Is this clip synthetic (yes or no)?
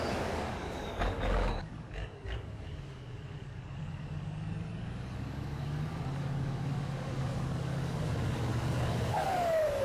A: yes